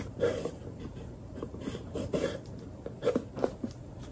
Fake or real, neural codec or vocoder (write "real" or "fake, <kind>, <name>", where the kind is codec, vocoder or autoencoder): fake, vocoder, BigVGAN v2